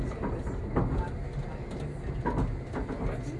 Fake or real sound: real